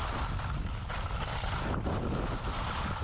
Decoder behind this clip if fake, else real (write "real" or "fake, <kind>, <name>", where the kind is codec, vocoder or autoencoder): real